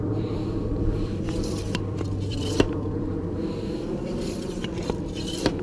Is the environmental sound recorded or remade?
remade